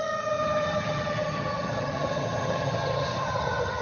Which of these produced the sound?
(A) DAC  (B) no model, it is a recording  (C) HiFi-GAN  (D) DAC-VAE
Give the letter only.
C